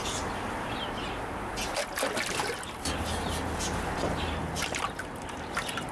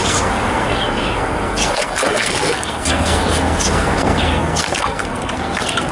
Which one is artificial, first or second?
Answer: second